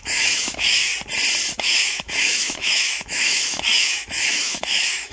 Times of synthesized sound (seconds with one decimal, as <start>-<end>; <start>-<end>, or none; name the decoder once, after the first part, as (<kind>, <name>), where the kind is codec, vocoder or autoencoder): 0.0-0.9 (autoencoder, DAC-VAE); 1.5-5.1